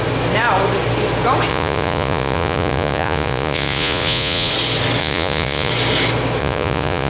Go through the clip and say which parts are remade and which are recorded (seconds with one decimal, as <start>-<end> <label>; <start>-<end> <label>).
0.0-1.5 recorded; 1.5-4.5 remade; 4.5-5.0 recorded; 5.0-5.7 remade; 5.7-6.4 recorded; 6.4-7.1 remade